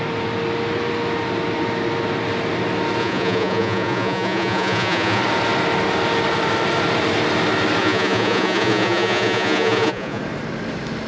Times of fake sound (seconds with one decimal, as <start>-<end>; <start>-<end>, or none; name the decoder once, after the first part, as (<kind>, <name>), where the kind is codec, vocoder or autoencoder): 3.0-5.2 (vocoder, Vocos); 7.8-10.2